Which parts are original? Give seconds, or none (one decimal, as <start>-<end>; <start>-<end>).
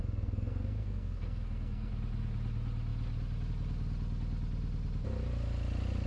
1.9-6.1